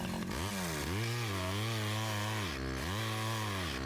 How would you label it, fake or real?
real